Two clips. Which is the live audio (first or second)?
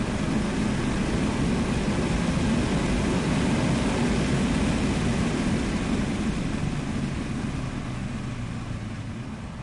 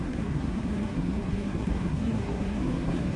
first